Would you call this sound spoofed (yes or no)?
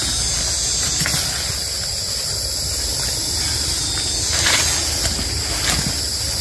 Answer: no